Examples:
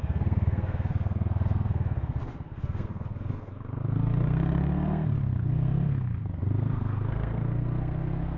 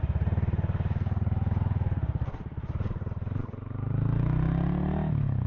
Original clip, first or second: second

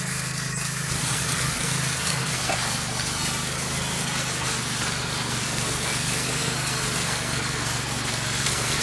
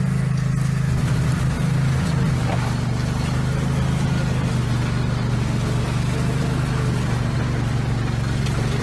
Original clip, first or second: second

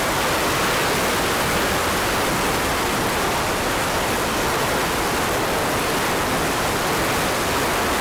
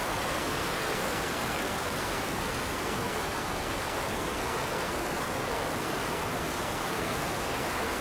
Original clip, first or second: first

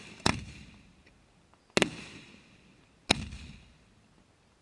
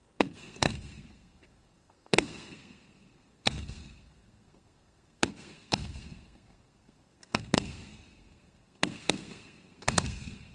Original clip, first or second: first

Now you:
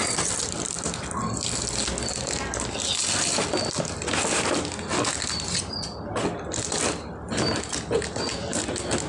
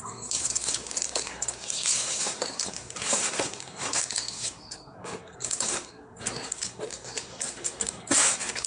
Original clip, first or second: first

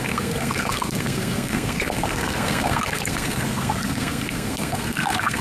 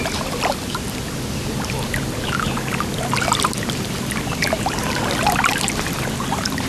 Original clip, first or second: second